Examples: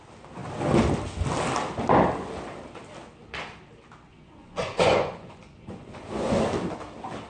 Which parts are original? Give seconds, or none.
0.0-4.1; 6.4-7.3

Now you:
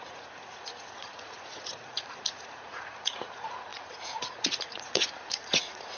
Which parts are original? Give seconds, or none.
none

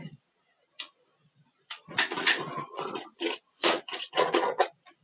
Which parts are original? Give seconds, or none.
none

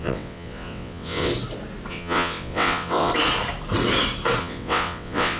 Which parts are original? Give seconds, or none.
1.3-1.9; 3.1-4.4

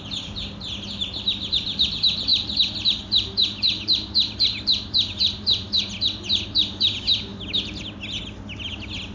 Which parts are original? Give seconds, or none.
0.0-9.1

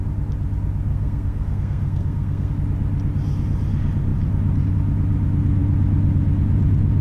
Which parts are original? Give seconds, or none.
0.0-0.9; 2.5-7.0

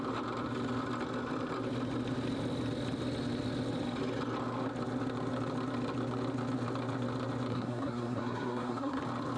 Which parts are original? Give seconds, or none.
0.0-7.5; 9.0-9.4

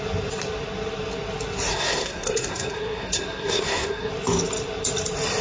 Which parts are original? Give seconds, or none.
0.0-1.7; 4.1-5.4